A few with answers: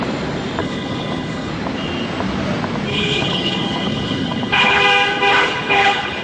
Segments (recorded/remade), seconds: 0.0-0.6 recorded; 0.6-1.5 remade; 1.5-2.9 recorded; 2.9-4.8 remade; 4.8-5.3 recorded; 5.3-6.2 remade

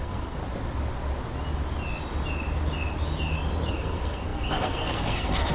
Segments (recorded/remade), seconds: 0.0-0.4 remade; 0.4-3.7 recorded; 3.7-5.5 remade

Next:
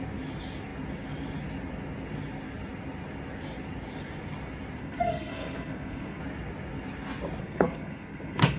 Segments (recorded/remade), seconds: 0.0-4.8 recorded; 4.8-6.2 remade; 6.2-7.4 recorded; 7.4-8.6 remade

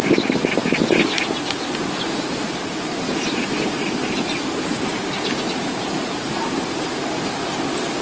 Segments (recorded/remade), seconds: 0.0-8.0 recorded

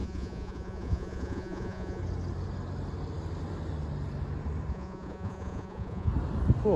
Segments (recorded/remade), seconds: 0.0-2.0 remade; 2.0-4.7 recorded; 4.7-6.1 remade; 6.1-6.8 recorded

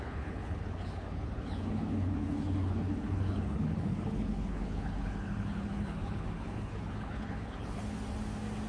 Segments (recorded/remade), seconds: 0.0-7.8 remade; 7.8-8.7 recorded

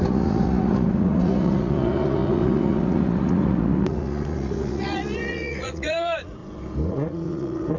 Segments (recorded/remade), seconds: 0.0-6.4 remade; 6.4-6.9 recorded; 6.9-7.8 remade

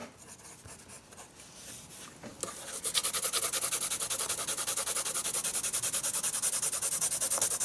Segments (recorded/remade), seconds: 0.0-7.6 recorded